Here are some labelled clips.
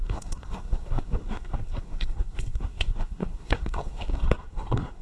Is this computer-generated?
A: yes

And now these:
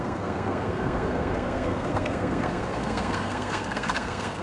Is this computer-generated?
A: yes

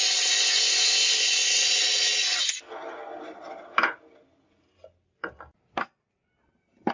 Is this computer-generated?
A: no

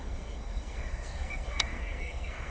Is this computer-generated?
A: yes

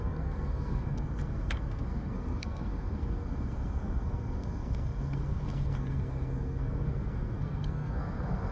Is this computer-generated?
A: yes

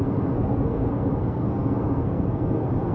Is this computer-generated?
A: yes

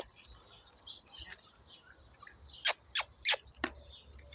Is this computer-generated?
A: no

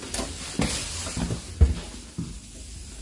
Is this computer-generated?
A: no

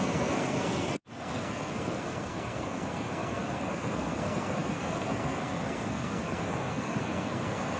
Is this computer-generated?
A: yes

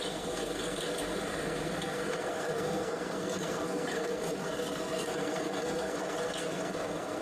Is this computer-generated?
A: yes